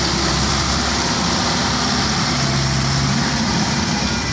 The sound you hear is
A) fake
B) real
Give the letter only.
B